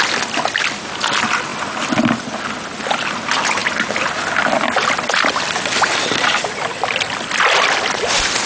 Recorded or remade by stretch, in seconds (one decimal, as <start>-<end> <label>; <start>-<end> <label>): 0.0-8.5 recorded